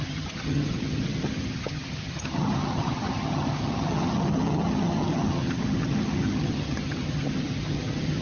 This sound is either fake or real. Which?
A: fake